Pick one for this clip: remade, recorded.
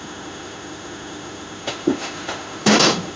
remade